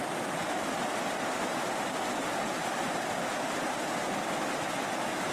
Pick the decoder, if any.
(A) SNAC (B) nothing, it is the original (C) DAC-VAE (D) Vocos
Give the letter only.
B